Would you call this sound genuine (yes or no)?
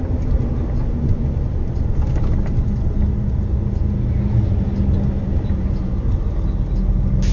yes